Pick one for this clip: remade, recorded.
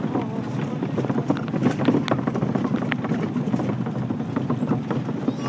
recorded